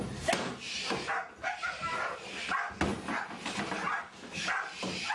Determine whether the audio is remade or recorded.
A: recorded